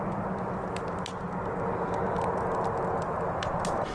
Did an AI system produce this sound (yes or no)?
no